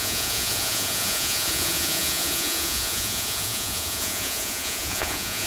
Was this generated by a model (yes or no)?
yes